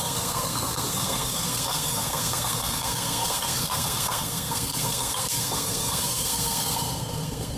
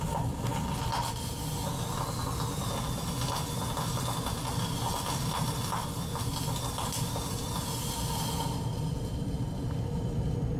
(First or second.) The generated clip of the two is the first